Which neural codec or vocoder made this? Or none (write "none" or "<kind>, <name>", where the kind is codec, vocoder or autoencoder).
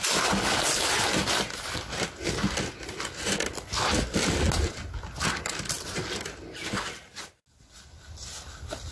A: none